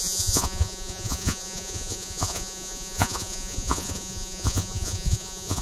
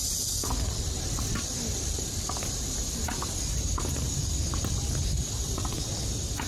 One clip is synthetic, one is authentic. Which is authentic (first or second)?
second